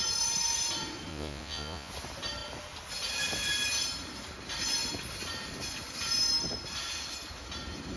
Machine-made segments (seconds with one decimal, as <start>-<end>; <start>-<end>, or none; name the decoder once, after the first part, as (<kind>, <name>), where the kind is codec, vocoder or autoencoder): 1.1-1.9 (vocoder, Vocos)